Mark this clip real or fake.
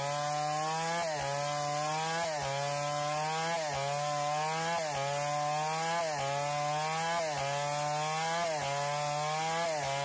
real